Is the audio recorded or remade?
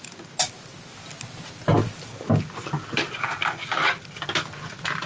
recorded